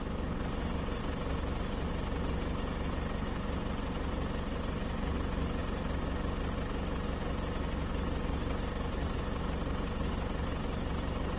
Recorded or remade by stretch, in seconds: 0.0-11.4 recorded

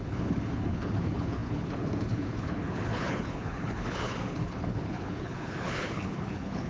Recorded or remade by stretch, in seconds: 0.0-6.7 remade

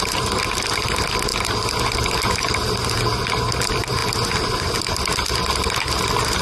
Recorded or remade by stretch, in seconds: 0.0-6.4 recorded

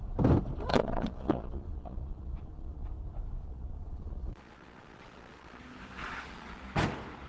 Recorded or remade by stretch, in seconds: 0.0-0.7 recorded; 0.7-2.9 remade; 2.9-3.4 recorded; 3.4-5.6 remade; 5.6-6.0 recorded; 6.0-6.6 remade; 6.6-7.3 recorded

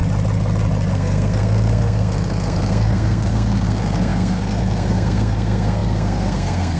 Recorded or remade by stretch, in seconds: 0.0-0.9 recorded; 0.9-6.8 remade

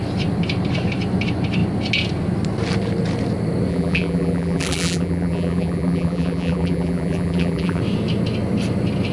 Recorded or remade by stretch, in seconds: 0.0-3.7 recorded; 3.7-7.8 remade; 7.8-9.1 recorded

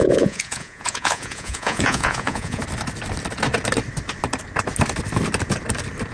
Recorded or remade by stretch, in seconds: 0.0-2.6 remade; 2.6-6.1 recorded